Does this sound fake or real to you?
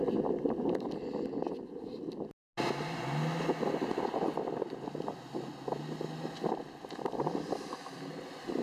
real